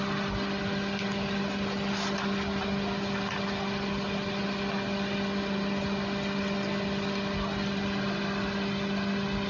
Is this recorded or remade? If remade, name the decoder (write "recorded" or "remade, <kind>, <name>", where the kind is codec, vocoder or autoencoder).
recorded